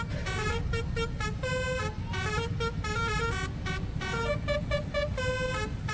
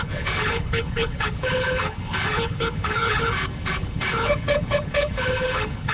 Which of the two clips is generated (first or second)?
second